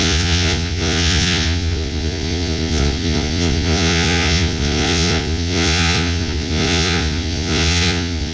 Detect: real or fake fake